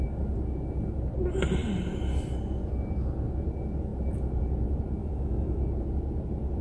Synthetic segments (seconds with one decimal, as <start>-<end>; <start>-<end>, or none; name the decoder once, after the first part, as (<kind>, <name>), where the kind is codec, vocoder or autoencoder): 5.0-5.6 (autoencoder, DAC-VAE)